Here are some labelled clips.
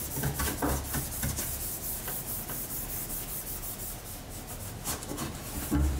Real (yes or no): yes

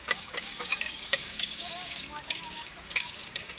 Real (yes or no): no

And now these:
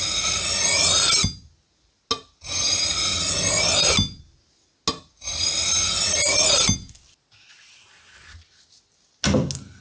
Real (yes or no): yes